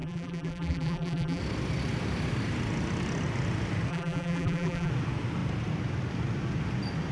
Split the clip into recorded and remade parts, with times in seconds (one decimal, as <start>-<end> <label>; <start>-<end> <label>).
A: 0.0-1.4 remade; 1.4-3.9 recorded; 3.9-4.9 remade; 4.9-7.1 recorded